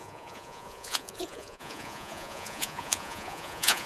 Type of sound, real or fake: fake